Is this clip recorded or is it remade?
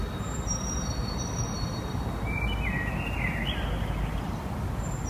recorded